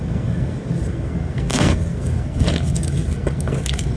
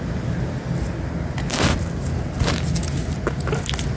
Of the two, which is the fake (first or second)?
first